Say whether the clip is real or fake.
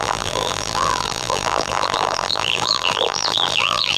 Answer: fake